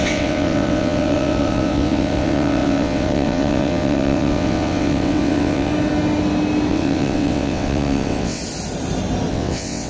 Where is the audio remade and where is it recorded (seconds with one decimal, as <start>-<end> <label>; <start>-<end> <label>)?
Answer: 0.0-5.7 remade; 5.7-6.7 recorded; 6.7-8.4 remade; 8.4-9.3 recorded; 9.3-9.9 remade